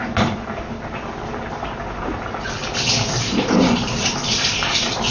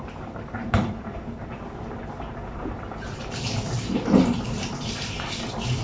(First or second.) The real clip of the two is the first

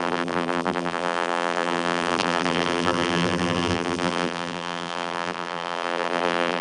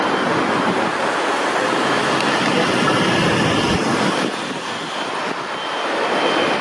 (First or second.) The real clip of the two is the second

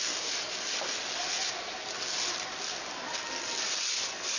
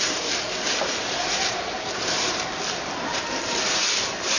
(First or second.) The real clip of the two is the first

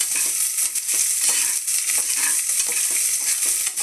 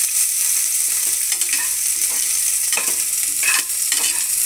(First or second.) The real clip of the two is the first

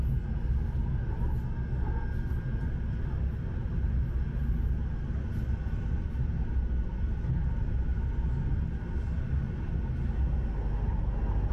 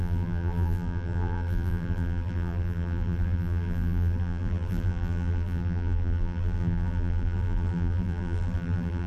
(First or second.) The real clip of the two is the first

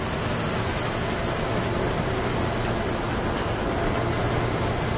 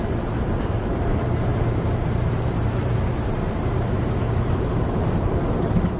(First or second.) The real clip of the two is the first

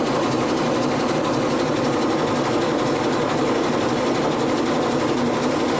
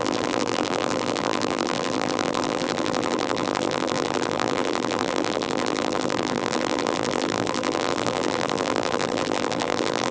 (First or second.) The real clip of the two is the first